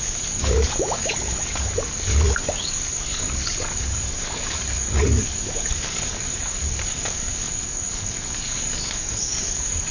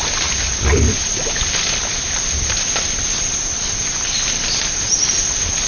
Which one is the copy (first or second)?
first